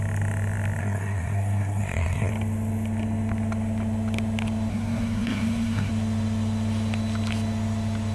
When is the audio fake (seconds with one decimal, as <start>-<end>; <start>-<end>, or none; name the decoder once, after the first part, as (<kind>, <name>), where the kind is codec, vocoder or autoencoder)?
0.8-2.3 (codec, SNAC); 4.7-5.9